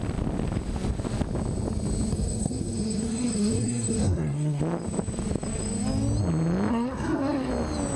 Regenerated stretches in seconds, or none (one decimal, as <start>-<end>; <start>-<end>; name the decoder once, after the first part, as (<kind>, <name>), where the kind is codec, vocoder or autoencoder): 2.1-4.6 (codec, SNAC); 6.7-7.5